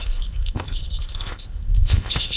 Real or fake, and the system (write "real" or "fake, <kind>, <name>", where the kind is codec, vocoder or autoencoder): fake, codec, ZipCodec